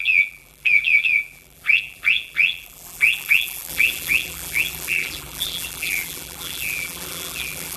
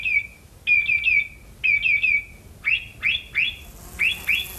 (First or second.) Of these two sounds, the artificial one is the first